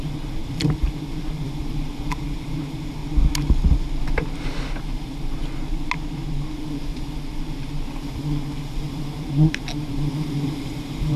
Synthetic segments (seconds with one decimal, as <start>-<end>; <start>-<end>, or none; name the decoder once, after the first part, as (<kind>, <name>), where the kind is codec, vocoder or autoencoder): 0.0-3.0 (vocoder, BigVGAN v2); 4.8-5.4; 6.6-11.2